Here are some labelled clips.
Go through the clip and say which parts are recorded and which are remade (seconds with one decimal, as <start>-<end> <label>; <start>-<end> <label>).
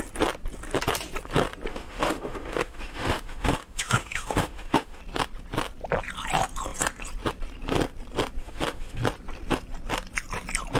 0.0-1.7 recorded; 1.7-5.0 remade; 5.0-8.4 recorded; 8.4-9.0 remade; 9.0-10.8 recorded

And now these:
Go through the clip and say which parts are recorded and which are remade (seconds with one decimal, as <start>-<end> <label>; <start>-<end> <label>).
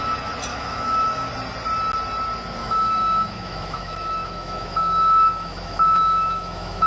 0.0-0.5 recorded; 0.5-1.3 remade; 1.3-2.6 recorded; 2.6-6.9 remade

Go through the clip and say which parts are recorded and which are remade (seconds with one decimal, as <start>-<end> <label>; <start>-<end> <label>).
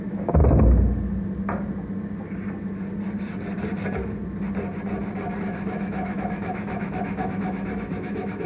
0.0-0.4 remade; 0.4-5.4 recorded; 5.4-8.5 remade